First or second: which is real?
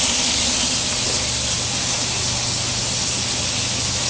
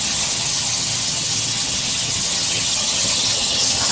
first